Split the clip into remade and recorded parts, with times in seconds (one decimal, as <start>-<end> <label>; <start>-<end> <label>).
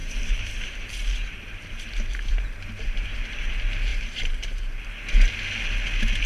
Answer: 0.0-3.5 remade; 3.5-3.9 recorded; 3.9-4.8 remade; 4.8-6.3 recorded